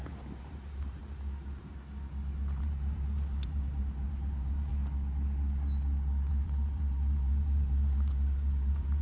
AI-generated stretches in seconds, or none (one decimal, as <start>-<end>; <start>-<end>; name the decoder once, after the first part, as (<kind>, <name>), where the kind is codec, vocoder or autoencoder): 0.0-1.0 (vocoder, BigVGAN v2); 2.6-4.7; 6.3-9.0